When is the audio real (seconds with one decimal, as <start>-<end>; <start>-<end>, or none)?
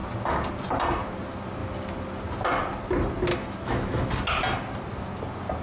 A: 0.0-3.3; 4.1-5.6